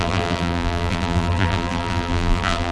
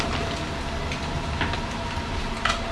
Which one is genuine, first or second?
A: second